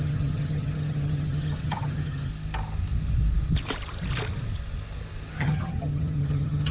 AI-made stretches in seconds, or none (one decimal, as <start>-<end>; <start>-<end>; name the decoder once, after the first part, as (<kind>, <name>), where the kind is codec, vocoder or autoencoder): 0.0-2.3 (vocoder, HiFi-GAN); 5.4-6.7